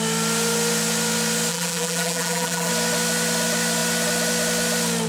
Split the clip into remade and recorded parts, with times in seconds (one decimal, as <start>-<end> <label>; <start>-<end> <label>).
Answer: 0.0-1.5 recorded; 1.5-2.7 remade; 2.7-5.1 recorded